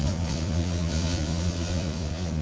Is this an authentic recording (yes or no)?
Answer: no